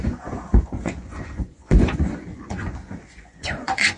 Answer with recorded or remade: remade